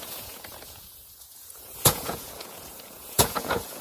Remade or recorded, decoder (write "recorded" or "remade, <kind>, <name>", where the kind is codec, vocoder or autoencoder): remade, vocoder, Vocos